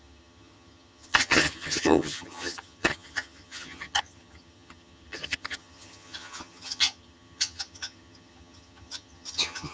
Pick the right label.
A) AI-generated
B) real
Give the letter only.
A